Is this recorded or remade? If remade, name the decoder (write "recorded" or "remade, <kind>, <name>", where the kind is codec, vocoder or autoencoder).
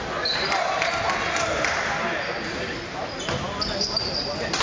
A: recorded